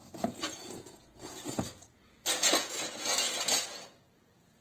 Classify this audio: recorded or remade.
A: remade